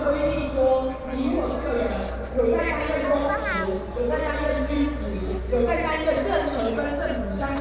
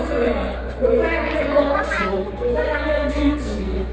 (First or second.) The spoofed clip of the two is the second